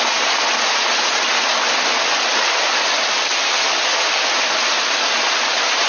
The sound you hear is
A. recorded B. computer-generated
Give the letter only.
A